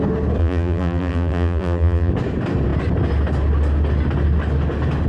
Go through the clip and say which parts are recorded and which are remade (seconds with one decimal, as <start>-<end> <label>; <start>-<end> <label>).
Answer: 0.0-0.4 recorded; 0.4-2.1 remade; 2.1-5.1 recorded